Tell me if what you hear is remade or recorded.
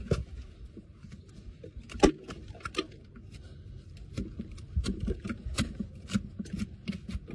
recorded